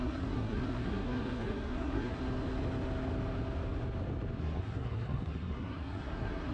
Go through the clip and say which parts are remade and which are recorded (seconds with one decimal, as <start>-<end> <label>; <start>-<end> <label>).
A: 0.0-2.2 remade; 2.2-4.4 recorded; 4.4-6.5 remade